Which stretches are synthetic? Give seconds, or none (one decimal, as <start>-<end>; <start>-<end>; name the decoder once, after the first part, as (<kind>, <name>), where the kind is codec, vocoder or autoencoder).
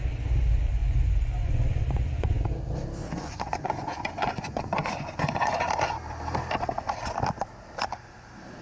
0.8-2.5 (vocoder, Vocos); 3.0-5.5